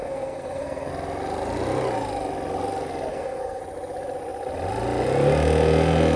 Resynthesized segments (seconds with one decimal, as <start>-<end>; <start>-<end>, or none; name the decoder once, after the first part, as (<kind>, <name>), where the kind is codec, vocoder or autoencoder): 0.0-0.9 (codec, SNAC); 3.1-3.6